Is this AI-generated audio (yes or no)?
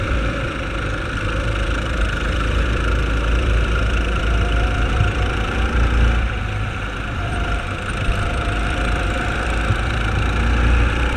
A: yes